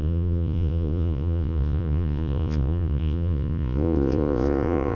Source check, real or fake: fake